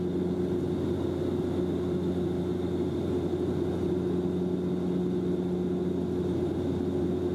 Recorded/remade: recorded